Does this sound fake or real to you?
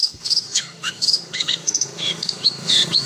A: fake